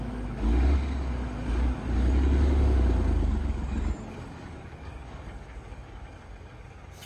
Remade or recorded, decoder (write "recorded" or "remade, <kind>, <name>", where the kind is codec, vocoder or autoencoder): remade, codec, DAC